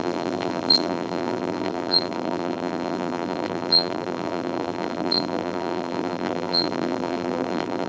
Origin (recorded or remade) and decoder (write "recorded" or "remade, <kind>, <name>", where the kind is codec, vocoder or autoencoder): remade, vocoder, BigVGAN v2